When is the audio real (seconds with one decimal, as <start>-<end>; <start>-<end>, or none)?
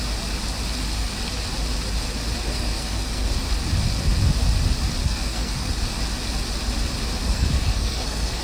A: 0.0-2.5; 3.3-5.0; 5.7-7.2